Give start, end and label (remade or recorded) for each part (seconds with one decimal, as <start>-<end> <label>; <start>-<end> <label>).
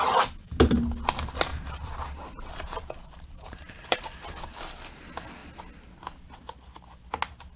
0.0-1.5 recorded; 1.5-4.6 remade; 4.6-7.6 recorded